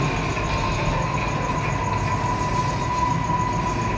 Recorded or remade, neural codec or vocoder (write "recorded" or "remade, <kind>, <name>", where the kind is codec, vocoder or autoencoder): recorded